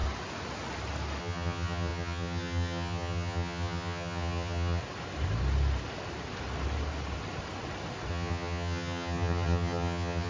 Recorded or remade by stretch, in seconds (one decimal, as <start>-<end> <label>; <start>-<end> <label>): 0.0-1.2 recorded; 1.2-4.8 remade; 4.8-8.1 recorded; 8.1-10.3 remade

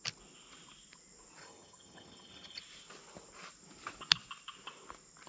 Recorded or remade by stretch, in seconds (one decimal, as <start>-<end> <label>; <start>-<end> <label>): 0.0-1.4 recorded; 1.4-2.6 remade; 2.6-5.3 recorded